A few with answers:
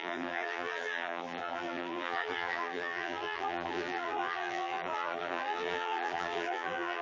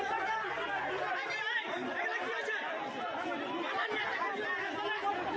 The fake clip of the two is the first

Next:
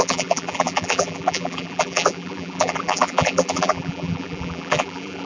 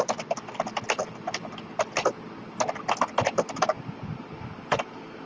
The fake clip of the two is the first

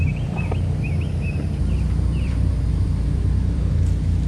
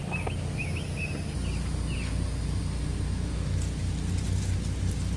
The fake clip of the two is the first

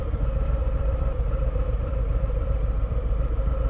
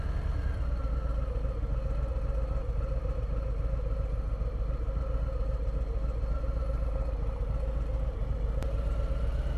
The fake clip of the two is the first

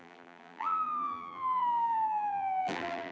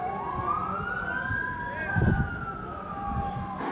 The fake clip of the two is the first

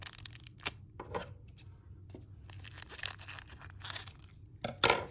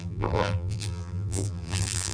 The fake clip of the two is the second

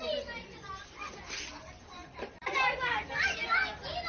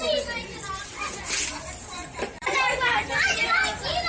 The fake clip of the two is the second